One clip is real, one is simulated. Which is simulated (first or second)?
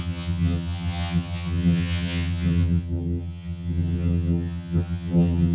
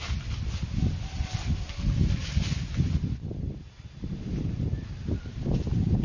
first